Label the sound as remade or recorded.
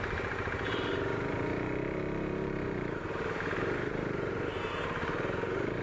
remade